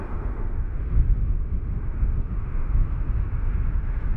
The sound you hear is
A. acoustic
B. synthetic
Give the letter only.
B